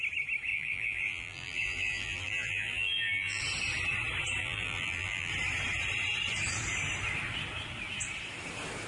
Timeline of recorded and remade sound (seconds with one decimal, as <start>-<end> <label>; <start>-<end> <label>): 0.0-0.5 recorded; 0.5-3.4 remade; 3.4-4.4 recorded; 4.4-5.3 remade; 5.3-8.9 recorded

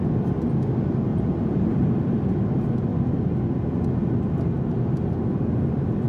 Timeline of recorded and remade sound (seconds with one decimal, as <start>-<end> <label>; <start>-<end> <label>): 0.0-1.1 recorded; 1.1-2.3 remade; 2.3-6.1 recorded

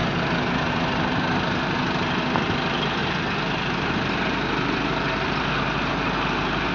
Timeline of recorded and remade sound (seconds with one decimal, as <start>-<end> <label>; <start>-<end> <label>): 0.0-3.0 recorded; 3.0-5.5 remade; 5.5-6.7 recorded

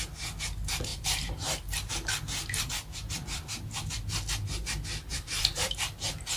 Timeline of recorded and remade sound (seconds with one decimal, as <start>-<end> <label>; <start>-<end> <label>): 0.0-0.9 recorded; 0.9-2.7 remade; 2.7-5.1 recorded; 5.1-5.8 remade; 5.8-6.4 recorded